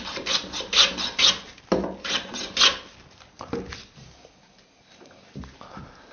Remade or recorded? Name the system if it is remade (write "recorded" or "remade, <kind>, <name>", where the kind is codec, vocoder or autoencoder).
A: recorded